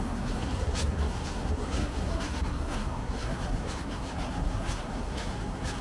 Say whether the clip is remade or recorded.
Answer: remade